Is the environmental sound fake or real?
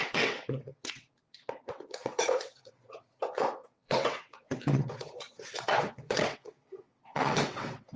fake